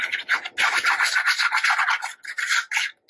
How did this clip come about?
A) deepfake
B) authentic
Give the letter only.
B